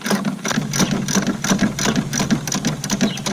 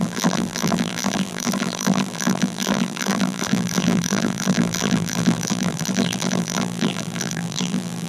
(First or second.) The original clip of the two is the first